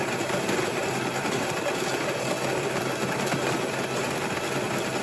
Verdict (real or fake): real